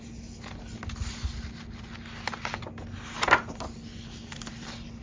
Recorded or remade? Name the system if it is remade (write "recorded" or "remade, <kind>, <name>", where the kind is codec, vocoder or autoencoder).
recorded